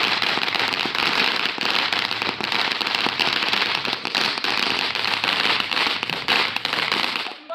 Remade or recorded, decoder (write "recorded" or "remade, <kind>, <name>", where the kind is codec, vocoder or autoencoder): remade, vocoder, BigVGAN v2